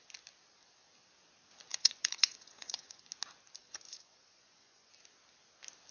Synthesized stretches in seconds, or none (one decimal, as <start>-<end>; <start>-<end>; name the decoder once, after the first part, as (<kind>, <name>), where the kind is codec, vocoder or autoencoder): 1.7-3.0 (vocoder, Vocos); 3.6-4.9